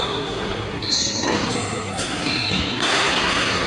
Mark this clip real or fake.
fake